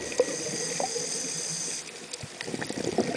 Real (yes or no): yes